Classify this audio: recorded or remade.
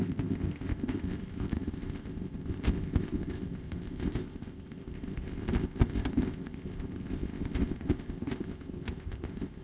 remade